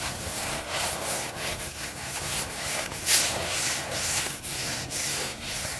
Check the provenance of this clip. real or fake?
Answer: fake